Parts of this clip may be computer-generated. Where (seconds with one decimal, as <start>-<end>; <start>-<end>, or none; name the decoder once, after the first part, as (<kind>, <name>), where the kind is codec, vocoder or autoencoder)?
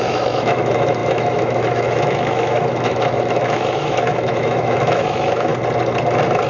0.0-5.5 (autoencoder, DAC-VAE)